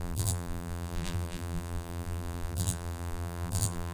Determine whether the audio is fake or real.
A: fake